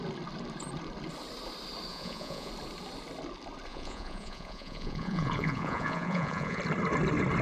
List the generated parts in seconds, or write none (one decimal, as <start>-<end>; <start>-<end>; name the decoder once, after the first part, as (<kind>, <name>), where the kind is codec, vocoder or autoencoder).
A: 1.9-2.5 (vocoder, Vocos); 3.7-6.6